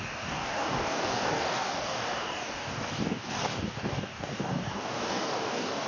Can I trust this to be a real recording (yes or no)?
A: no